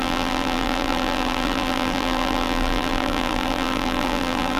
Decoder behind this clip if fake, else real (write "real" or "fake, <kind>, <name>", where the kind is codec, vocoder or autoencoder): fake, vocoder, BigVGAN v2